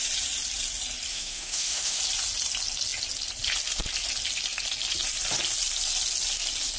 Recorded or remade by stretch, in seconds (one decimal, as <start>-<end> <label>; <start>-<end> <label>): 0.0-1.1 recorded; 1.1-2.0 remade; 2.0-6.8 recorded